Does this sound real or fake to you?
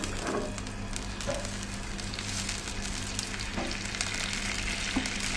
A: real